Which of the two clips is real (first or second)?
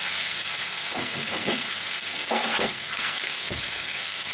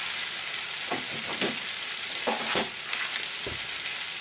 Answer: second